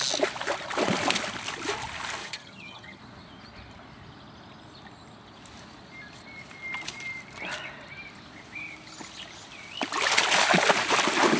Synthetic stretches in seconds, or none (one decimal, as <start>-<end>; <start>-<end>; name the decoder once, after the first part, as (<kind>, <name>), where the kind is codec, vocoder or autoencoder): 2.2-3.0 (vocoder, HiFi-GAN)